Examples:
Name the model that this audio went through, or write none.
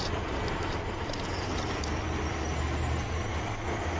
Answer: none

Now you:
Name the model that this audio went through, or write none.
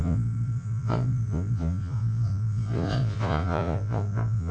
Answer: vocoder, Vocos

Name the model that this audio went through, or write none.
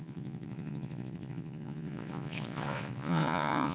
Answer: vocoder, Vocos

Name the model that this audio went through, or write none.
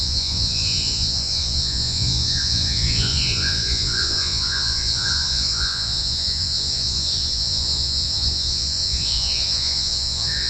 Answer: vocoder, Vocos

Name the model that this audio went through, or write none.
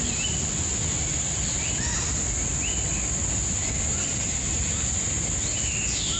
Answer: none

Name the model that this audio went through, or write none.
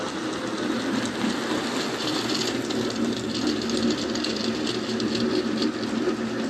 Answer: none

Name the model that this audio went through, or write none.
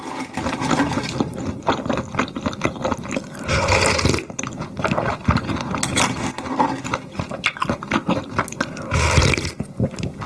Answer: none